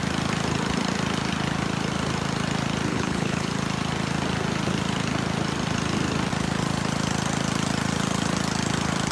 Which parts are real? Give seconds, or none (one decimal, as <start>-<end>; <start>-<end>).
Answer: 0.0-2.9; 3.5-9.1

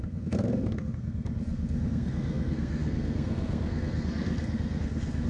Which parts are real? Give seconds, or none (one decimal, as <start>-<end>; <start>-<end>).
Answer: none

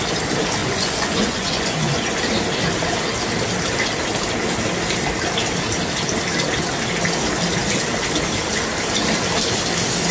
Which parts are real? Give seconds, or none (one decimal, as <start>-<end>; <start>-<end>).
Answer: 0.0-0.6; 2.2-10.1

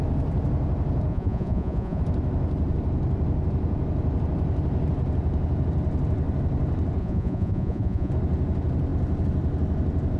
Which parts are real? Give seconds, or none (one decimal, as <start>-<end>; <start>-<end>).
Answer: 0.0-1.1; 2.0-7.0; 8.1-10.2

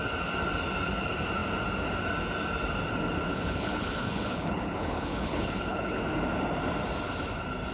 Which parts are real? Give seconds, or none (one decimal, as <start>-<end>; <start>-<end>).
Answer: 0.0-3.3; 6.0-7.7

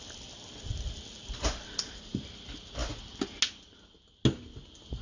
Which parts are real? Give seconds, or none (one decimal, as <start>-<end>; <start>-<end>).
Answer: 0.0-5.0

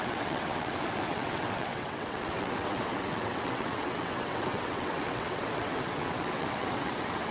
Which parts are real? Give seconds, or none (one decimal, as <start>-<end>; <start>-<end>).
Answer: none